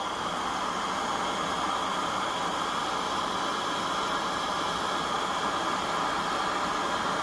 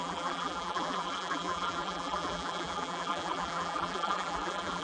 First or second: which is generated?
second